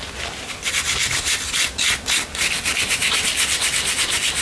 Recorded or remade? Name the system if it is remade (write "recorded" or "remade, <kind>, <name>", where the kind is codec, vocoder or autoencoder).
recorded